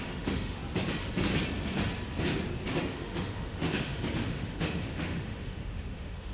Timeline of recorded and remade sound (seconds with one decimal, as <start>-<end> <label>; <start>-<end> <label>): 0.0-0.6 remade; 0.6-2.8 recorded; 2.8-6.3 remade